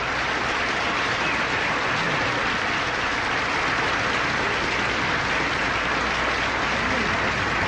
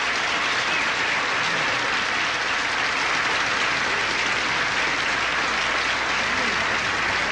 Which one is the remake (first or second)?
first